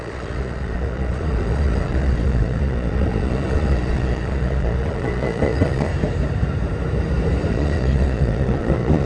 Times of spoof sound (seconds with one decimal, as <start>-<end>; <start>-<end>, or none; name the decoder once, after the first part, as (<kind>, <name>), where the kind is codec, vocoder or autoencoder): 0.0-5.9 (vocoder, Vocos); 7.5-9.1